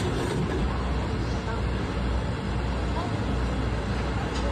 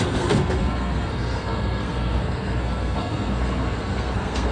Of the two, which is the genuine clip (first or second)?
first